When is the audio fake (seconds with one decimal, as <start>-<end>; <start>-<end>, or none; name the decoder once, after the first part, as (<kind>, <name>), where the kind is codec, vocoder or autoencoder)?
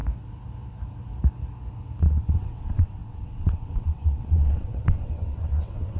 2.0-6.0 (vocoder, WaveNeXt)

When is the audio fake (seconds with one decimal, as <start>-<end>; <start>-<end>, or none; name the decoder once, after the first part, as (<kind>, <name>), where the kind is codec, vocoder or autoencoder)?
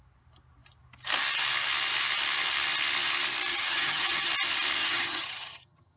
3.5-4.3 (vocoder, HiFi-GAN); 4.8-6.0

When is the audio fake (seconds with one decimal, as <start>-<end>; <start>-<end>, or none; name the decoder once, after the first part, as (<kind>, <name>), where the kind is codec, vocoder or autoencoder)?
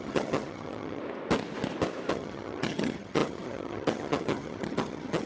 0.0-1.0 (vocoder, HiFi-GAN); 2.1-5.3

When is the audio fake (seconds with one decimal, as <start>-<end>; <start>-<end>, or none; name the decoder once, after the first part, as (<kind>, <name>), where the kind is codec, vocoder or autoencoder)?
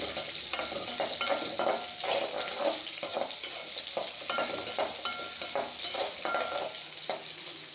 3.1-3.7 (vocoder, BigVGAN v2)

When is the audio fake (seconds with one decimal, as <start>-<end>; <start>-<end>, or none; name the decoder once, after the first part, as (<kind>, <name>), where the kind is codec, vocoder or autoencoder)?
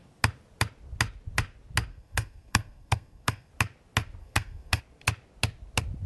1.9-3.5 (codec, SNAC); 4.2-4.8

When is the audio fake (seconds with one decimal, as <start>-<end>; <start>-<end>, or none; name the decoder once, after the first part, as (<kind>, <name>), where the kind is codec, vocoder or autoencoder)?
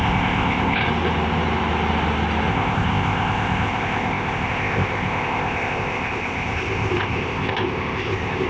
0.0-0.8 (codec, ZipCodec); 2.5-8.5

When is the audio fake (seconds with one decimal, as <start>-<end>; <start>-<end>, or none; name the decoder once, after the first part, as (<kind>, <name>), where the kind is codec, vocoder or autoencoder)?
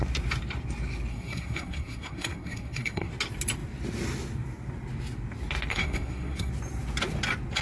1.1-3.1 (codec, SNAC); 5.7-6.5